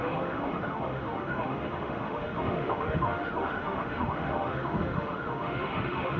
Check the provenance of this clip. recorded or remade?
remade